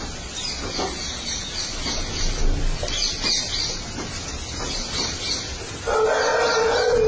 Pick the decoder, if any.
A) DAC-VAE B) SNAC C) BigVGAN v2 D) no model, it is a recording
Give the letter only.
D